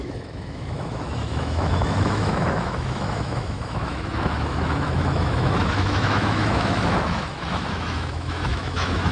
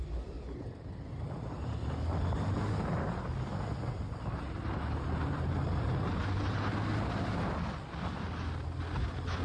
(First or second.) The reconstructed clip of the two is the first